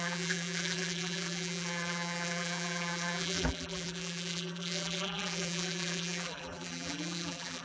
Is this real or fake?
fake